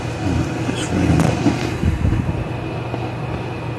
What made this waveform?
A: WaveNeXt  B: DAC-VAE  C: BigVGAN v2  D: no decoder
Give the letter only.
D